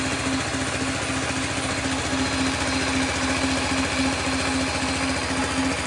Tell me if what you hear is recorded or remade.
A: recorded